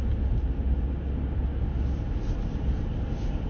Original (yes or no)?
yes